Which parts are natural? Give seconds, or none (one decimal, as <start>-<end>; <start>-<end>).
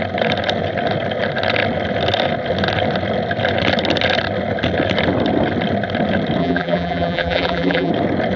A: 0.0-6.4; 7.9-8.4